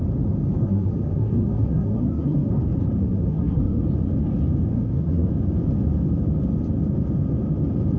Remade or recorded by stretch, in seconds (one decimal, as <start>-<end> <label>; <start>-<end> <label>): 0.0-0.6 recorded; 0.6-2.5 remade; 2.5-3.0 recorded; 3.0-3.8 remade; 3.8-4.7 recorded; 4.7-5.3 remade; 5.3-8.0 recorded